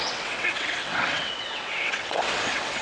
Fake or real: fake